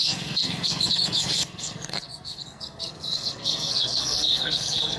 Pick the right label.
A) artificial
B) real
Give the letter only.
A